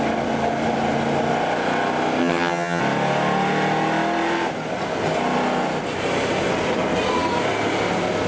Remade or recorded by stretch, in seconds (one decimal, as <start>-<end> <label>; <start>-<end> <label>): 0.0-2.2 recorded; 2.2-2.8 remade; 2.8-8.3 recorded